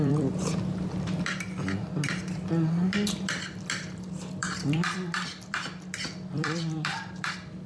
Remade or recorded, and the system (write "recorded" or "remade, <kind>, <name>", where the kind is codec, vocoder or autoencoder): remade, vocoder, BigVGAN v2